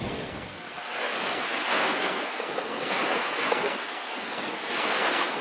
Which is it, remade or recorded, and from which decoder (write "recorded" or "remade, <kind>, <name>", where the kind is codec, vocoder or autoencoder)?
remade, codec, SNAC